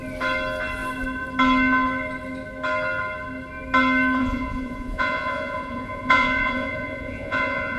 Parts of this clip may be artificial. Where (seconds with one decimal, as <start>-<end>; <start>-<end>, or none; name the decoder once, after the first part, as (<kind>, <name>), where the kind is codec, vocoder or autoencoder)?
4.2-7.8 (vocoder, Vocos)